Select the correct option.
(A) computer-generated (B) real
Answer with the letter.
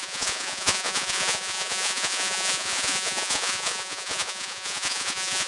A